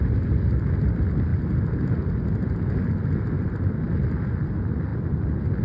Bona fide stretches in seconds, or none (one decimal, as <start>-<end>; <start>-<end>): 0.0-5.6